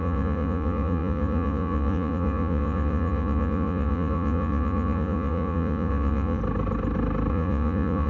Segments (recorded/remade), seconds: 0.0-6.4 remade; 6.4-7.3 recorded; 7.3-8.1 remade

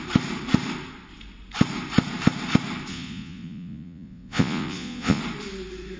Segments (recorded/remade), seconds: 0.0-2.9 recorded; 2.9-5.2 remade; 5.2-6.0 recorded

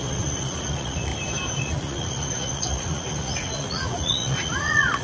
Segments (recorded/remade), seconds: 0.0-1.1 remade; 1.1-1.6 recorded; 1.6-5.0 remade

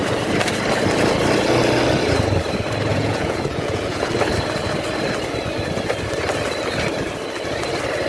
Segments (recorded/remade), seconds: 0.0-2.9 recorded; 2.9-4.1 remade; 4.1-8.1 recorded

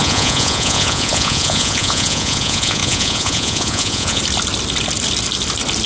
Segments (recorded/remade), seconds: 0.0-4.2 remade; 4.2-5.9 recorded